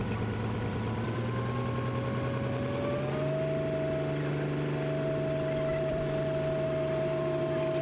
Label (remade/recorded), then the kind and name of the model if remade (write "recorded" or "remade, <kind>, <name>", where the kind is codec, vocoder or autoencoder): remade, vocoder, BigVGAN v2